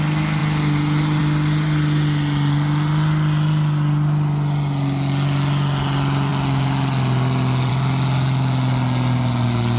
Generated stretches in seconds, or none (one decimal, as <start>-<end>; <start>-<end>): none